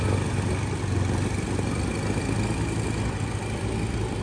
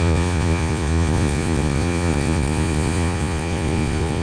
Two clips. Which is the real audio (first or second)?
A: first